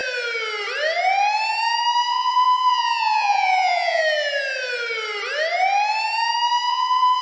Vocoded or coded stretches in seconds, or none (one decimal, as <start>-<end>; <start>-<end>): 2.1-4.0; 6.7-7.2